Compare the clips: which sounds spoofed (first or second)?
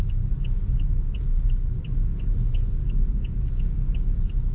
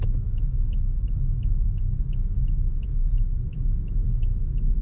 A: second